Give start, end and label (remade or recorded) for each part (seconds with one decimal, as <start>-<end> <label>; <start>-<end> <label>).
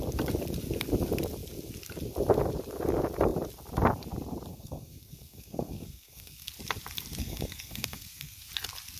0.0-4.5 recorded; 4.5-6.5 remade; 6.5-7.2 recorded; 7.2-8.5 remade; 8.5-9.0 recorded